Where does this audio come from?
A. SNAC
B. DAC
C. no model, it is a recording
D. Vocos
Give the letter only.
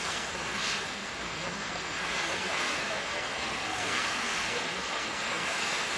A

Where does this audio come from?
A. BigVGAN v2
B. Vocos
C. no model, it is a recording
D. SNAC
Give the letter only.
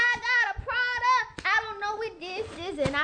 C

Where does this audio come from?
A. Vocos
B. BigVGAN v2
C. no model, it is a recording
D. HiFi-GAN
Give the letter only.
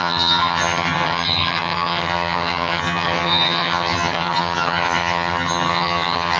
D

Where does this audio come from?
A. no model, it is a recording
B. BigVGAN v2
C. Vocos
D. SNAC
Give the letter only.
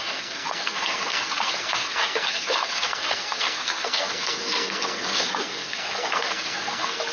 D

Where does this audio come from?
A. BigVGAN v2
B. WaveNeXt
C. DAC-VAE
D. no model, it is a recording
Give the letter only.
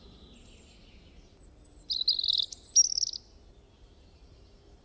D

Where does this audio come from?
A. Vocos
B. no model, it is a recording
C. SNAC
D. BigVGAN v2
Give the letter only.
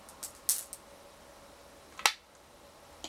B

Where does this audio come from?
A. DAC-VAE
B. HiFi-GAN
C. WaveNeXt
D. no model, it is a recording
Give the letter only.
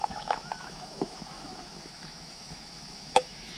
A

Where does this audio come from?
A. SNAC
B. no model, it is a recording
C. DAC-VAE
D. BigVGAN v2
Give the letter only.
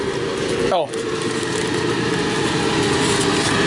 B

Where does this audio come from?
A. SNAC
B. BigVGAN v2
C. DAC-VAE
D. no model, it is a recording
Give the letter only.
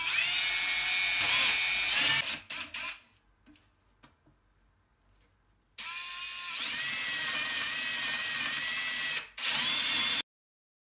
D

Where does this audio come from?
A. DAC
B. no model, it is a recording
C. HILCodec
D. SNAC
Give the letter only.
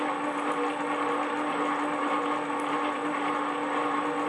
B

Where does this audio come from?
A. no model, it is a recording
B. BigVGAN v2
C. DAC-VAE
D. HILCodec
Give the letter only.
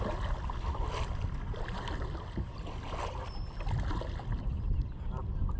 A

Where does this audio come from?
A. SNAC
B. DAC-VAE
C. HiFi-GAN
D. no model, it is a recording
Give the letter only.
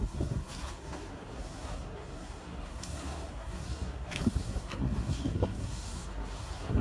A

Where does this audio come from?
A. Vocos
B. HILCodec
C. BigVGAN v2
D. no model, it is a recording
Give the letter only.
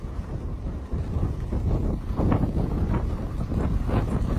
D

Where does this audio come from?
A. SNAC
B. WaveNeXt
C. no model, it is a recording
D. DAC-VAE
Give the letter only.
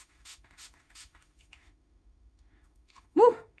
D